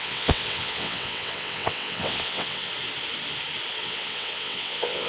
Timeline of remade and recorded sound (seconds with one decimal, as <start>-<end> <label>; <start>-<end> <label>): 0.0-2.7 remade; 2.7-3.8 recorded; 3.8-5.1 remade